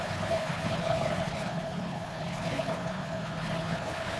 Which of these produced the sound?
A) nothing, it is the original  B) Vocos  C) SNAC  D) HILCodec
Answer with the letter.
D